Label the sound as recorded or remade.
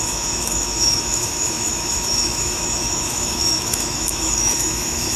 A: remade